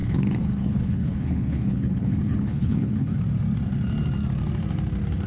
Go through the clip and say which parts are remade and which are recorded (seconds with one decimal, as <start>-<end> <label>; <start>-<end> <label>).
0.0-3.2 remade; 3.2-5.3 recorded